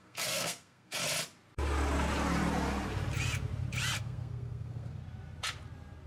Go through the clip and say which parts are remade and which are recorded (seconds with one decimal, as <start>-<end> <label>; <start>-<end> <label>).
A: 0.0-1.0 remade; 1.0-4.0 recorded; 4.0-5.0 remade; 5.0-6.1 recorded